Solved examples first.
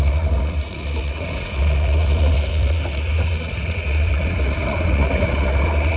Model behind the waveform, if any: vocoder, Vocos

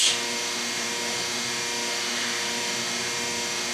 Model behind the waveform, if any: none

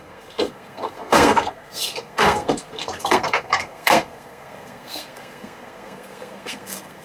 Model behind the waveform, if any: codec, SNAC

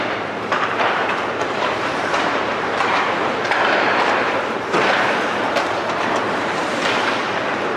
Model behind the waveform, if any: vocoder, BigVGAN v2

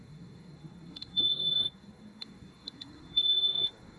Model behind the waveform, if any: codec, SNAC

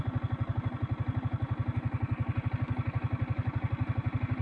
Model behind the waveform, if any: none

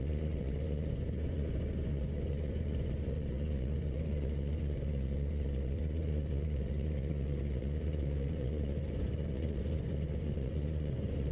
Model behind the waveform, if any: vocoder, Vocos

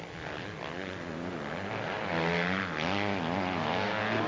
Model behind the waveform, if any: none